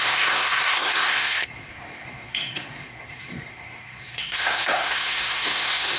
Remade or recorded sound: remade